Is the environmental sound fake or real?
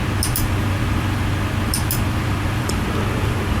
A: real